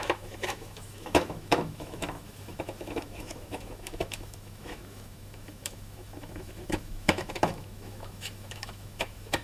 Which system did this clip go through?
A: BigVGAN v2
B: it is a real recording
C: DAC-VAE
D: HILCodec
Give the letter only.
C